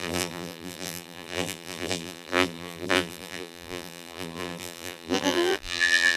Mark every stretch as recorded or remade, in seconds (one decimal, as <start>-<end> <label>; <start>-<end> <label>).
0.0-6.2 remade